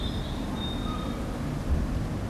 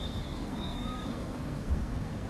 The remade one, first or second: second